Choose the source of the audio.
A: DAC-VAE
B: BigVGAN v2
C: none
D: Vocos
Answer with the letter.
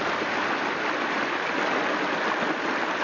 C